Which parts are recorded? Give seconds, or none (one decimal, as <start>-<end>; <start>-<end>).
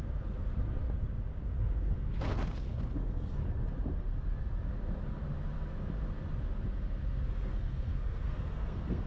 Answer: 0.8-1.4; 3.4-7.3